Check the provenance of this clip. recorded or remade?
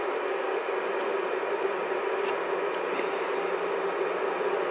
recorded